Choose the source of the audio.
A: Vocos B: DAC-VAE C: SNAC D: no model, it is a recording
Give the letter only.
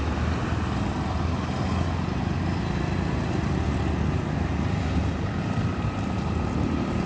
D